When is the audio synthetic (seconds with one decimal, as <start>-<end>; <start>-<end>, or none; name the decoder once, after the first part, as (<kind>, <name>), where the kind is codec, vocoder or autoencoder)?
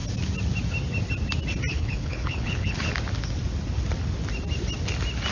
1.7-2.9 (codec, HILCodec)